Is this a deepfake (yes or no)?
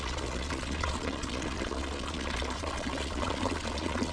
yes